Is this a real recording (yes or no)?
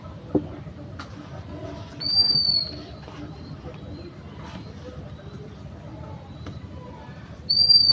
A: yes